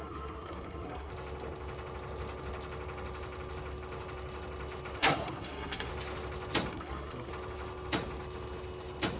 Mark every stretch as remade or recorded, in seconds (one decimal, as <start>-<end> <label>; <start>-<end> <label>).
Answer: 0.0-1.1 remade; 1.1-5.0 recorded; 5.0-5.9 remade; 5.9-6.7 recorded; 6.7-7.3 remade; 7.3-9.2 recorded